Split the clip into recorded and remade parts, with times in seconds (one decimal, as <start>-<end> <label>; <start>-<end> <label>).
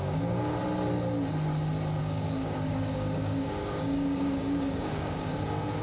0.0-0.6 remade; 0.6-2.0 recorded; 2.0-5.8 remade